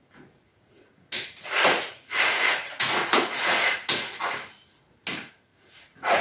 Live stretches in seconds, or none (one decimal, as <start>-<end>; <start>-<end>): 0.0-0.5; 4.2-5.5